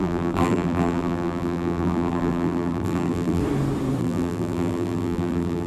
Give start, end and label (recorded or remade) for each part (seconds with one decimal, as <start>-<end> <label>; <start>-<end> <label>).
0.0-3.4 remade; 3.4-4.0 recorded; 4.0-5.7 remade

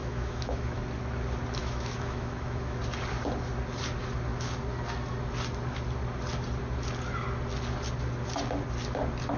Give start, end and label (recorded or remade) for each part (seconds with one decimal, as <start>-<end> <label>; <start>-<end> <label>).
0.0-0.8 remade; 0.8-1.6 recorded; 1.6-2.8 remade; 2.8-9.4 recorded

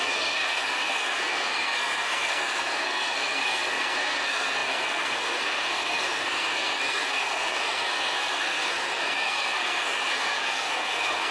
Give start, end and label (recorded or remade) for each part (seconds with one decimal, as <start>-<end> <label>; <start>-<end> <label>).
0.0-11.3 remade

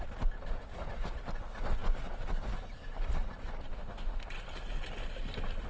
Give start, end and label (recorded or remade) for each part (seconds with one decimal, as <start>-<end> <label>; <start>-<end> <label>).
0.0-3.7 recorded; 3.7-4.3 remade; 4.3-5.7 recorded